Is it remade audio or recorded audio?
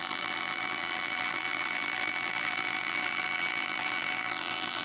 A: remade